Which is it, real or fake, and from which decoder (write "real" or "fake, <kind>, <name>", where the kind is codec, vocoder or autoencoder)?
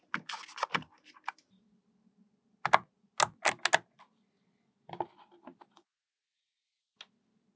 real